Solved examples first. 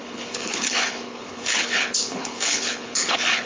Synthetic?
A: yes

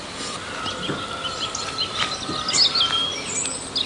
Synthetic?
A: no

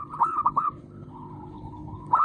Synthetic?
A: yes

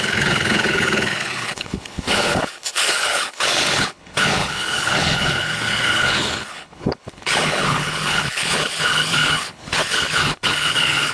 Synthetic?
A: yes